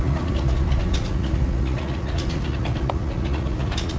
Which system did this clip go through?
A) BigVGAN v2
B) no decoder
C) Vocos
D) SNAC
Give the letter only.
C